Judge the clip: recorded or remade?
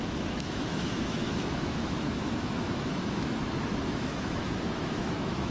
remade